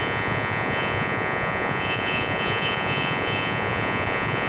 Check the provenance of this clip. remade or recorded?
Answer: remade